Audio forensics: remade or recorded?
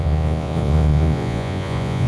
remade